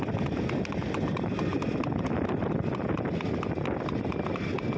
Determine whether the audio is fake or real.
real